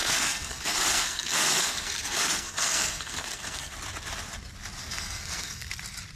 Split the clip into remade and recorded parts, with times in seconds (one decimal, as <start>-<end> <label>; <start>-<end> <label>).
0.0-3.7 remade; 3.7-4.8 recorded; 4.8-5.7 remade; 5.7-6.2 recorded